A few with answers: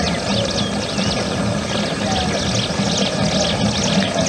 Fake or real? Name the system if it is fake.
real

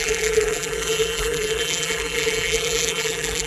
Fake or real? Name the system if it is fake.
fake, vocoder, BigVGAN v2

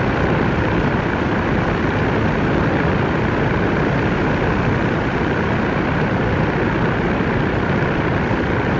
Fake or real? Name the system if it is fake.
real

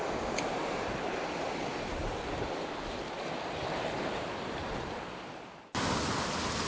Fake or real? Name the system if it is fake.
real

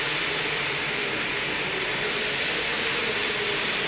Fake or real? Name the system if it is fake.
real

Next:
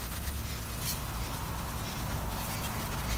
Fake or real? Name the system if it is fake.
real